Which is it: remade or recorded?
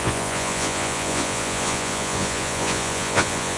remade